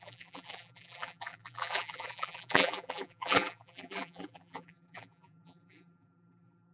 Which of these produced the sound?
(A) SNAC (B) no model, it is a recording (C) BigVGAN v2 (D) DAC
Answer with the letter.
C